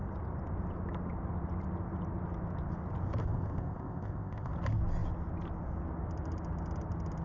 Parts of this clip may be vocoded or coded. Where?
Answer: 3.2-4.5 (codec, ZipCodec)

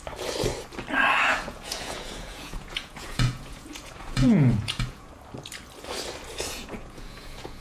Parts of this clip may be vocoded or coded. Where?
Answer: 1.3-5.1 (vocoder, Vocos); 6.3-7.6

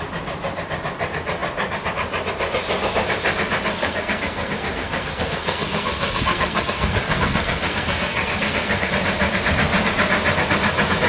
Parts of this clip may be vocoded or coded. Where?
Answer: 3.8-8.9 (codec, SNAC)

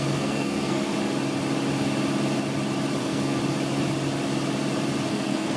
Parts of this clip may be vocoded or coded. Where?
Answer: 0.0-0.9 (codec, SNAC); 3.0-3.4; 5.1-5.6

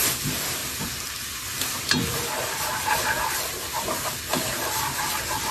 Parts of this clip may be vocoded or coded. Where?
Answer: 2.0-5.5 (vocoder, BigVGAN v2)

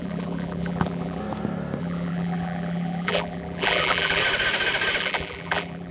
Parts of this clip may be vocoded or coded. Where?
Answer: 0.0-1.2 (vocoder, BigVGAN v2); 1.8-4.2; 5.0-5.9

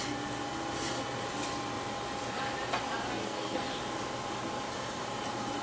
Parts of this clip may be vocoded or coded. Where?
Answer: 3.2-3.8 (codec, SNAC)

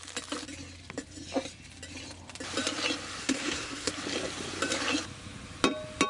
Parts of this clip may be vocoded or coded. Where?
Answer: 3.2-3.9 (codec, SNAC)